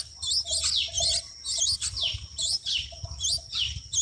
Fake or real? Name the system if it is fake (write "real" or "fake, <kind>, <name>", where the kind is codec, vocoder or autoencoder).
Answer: real